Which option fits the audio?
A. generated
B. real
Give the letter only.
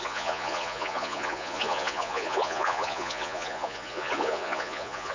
A